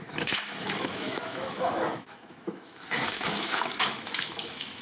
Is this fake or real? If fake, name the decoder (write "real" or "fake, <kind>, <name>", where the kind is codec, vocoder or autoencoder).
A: fake, autoencoder, DAC-VAE